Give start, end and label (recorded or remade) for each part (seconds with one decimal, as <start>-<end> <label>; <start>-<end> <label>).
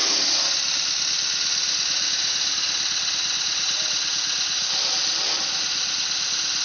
0.0-4.6 recorded; 4.6-5.3 remade; 5.3-6.6 recorded